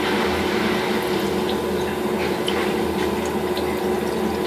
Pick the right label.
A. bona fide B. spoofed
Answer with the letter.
A